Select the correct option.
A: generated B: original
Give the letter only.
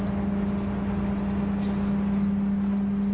B